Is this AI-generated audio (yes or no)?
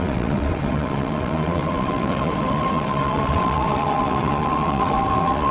yes